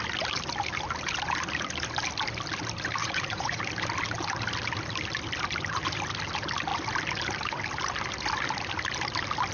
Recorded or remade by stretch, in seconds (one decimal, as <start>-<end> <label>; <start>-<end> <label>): 0.0-3.0 recorded; 3.0-3.6 remade; 3.6-9.5 recorded